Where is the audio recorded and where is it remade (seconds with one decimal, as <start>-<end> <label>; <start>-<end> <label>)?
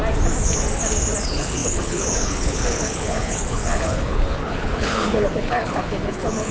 0.0-1.2 recorded; 1.2-6.5 remade